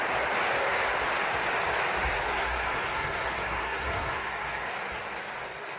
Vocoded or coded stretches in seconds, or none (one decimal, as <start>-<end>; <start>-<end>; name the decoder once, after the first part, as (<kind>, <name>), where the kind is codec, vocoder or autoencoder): 2.3-4.7 (codec, SNAC)